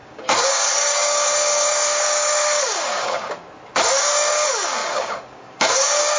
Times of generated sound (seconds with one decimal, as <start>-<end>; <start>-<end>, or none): 0.0-3.4; 4.0-6.2